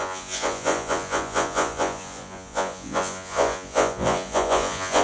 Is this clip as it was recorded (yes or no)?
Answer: no